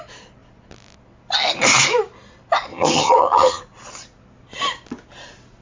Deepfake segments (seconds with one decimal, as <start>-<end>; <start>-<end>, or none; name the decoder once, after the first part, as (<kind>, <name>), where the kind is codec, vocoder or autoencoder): 2.7-3.6 (vocoder, HiFi-GAN)